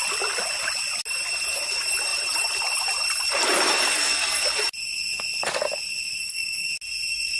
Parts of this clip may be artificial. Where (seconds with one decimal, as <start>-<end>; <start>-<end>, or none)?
4.0-4.6; 6.2-6.7